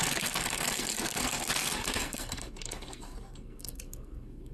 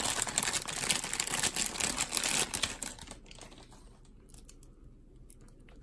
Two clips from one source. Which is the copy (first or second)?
first